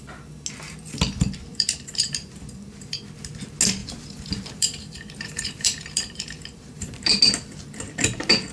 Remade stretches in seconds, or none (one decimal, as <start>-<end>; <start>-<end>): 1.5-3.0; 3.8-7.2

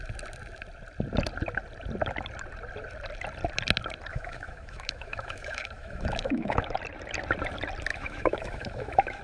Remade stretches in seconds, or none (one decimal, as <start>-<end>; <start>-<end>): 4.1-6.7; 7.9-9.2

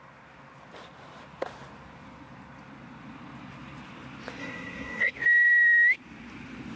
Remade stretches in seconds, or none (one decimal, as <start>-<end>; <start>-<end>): 4.4-5.1